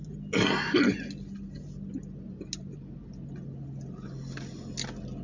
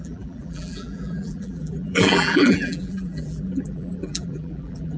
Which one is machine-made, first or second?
second